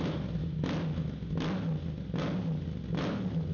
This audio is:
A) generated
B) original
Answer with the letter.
B